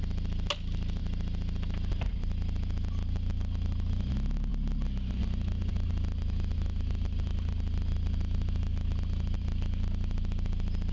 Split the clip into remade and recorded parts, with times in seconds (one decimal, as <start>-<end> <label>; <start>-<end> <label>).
0.0-10.9 recorded